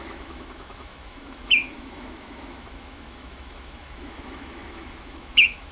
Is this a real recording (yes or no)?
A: no